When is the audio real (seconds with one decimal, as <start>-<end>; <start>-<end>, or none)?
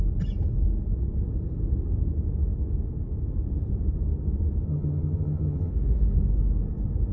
0.0-4.7; 5.7-7.1